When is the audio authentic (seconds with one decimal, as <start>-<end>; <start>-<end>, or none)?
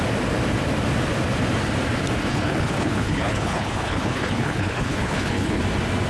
0.0-2.3; 5.6-6.1